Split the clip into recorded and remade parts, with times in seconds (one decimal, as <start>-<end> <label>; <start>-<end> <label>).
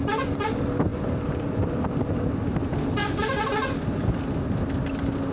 0.0-5.3 recorded